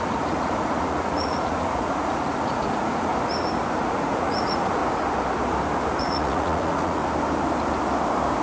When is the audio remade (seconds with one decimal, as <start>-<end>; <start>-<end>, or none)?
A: 0.0-3.1; 3.8-4.8; 6.0-7.0